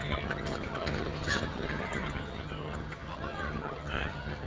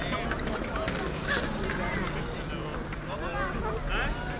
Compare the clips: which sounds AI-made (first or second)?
first